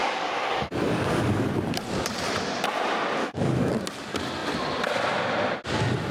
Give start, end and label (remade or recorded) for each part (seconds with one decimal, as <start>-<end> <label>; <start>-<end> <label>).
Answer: 0.0-1.5 remade; 1.5-3.2 recorded; 3.2-3.7 remade; 3.7-6.1 recorded